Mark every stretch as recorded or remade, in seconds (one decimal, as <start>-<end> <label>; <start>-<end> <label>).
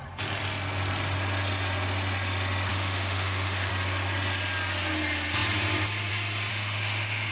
0.0-2.7 recorded; 2.7-3.7 remade; 3.7-6.5 recorded; 6.5-7.3 remade